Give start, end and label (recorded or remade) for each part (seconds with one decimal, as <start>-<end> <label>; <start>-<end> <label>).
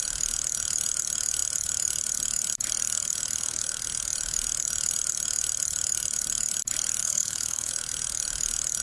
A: 0.0-7.0 recorded; 7.0-7.7 remade; 7.7-8.8 recorded